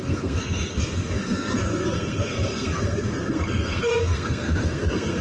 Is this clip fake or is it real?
fake